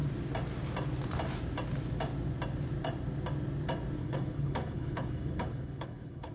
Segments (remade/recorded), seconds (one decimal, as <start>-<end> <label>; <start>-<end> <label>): 0.0-4.0 recorded; 4.0-6.3 remade